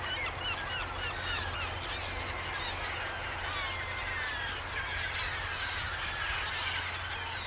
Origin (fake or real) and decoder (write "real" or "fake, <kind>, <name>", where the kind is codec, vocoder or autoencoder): real